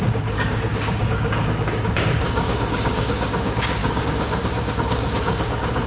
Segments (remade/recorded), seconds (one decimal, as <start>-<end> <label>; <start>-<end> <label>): 0.0-5.9 remade